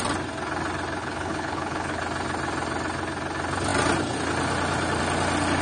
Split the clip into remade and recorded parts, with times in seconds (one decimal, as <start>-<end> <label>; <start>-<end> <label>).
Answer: 0.0-1.0 recorded; 1.0-2.0 remade; 2.0-5.6 recorded